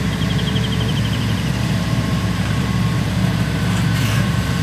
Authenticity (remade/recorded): remade